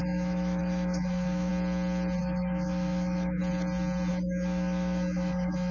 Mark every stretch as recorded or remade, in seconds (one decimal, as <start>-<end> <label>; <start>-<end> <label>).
0.0-1.5 remade; 1.5-2.2 recorded; 2.2-3.4 remade; 3.4-4.1 recorded; 4.1-5.7 remade

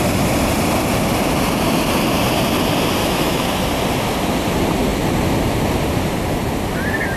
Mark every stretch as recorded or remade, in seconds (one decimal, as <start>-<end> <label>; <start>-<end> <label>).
0.0-3.0 recorded; 3.0-3.5 remade; 3.5-7.2 recorded

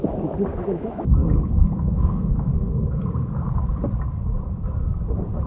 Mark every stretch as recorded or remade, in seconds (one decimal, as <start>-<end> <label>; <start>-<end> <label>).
0.0-0.5 recorded; 0.5-2.7 remade; 2.7-5.5 recorded

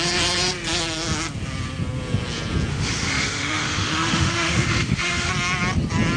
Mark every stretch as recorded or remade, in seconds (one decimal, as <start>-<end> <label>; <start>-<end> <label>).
0.0-2.7 recorded; 2.7-5.3 remade; 5.3-6.2 recorded

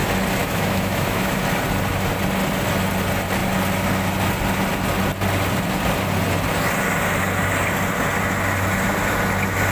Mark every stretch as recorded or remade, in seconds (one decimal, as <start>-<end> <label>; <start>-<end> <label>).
0.0-0.4 recorded; 0.4-1.4 remade; 1.4-9.7 recorded

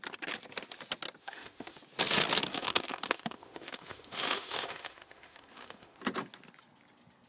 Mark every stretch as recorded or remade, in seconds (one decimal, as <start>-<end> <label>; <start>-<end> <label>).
0.0-1.2 recorded; 1.2-1.8 remade; 1.8-2.5 recorded; 2.5-6.0 remade; 6.0-7.3 recorded

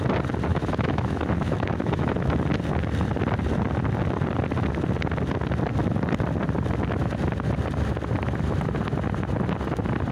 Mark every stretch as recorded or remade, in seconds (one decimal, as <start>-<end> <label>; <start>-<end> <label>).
0.0-0.5 recorded; 0.5-2.3 remade; 2.3-10.1 recorded